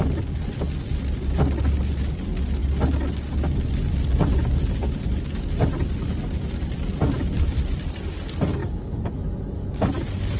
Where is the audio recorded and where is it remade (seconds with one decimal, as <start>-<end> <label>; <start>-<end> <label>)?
0.0-8.6 recorded; 8.6-9.1 remade; 9.1-10.4 recorded